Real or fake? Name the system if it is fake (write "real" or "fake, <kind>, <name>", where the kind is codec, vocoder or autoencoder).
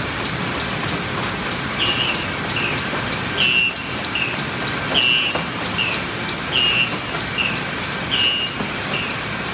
real